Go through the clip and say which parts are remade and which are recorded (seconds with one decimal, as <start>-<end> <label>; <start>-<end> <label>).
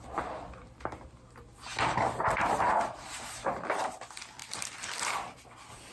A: 0.0-5.9 recorded